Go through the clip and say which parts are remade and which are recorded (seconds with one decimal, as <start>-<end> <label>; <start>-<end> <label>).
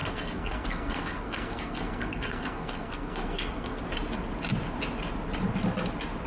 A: 0.0-3.8 remade; 3.8-6.3 recorded